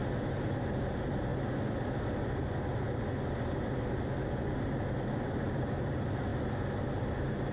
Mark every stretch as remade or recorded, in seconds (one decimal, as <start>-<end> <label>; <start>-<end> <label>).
0.0-1.3 remade; 1.3-4.9 recorded; 4.9-6.3 remade; 6.3-7.0 recorded; 7.0-7.5 remade